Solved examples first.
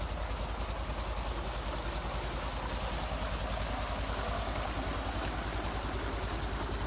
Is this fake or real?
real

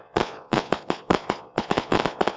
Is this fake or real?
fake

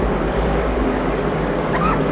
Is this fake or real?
fake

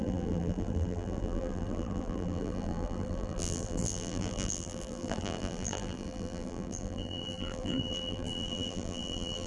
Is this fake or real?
fake